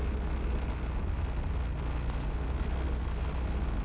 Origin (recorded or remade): recorded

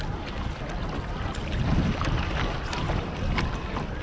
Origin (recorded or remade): recorded